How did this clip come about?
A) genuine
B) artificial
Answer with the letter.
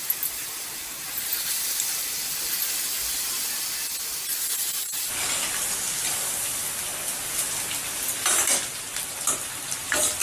A